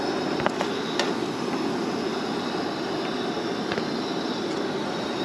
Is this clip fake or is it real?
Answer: real